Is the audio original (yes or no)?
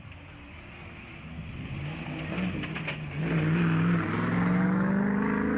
yes